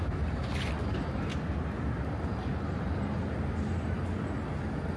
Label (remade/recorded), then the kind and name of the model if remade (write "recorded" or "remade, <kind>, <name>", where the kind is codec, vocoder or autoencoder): recorded